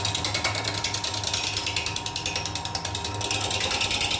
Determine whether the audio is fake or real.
real